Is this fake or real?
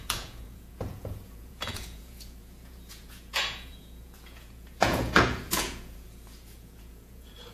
fake